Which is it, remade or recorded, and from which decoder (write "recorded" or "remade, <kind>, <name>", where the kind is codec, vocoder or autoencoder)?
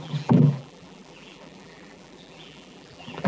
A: remade, vocoder, BigVGAN v2